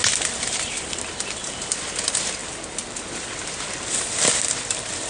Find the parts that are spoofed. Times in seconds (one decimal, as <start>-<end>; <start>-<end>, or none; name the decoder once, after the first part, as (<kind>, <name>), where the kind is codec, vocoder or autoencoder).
0.7-2.4 (vocoder, BigVGAN v2)